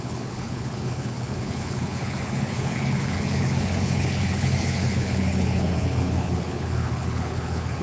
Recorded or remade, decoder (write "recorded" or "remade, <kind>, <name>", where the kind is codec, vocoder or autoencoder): remade, codec, HILCodec